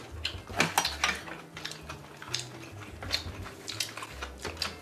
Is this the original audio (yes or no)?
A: yes